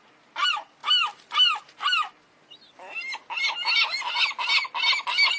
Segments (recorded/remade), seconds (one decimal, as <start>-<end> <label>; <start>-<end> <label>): 0.0-5.4 recorded